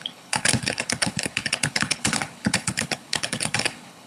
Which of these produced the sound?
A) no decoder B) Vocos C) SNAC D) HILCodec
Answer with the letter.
D